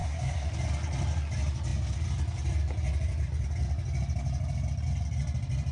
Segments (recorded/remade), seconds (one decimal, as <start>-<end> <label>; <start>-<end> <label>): 0.0-0.5 remade; 0.5-5.7 recorded